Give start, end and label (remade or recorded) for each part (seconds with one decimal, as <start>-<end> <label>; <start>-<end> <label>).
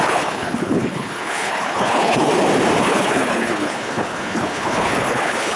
0.0-2.3 remade; 2.3-2.8 recorded; 2.8-5.6 remade